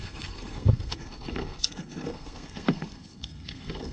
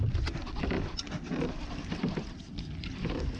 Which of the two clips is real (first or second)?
second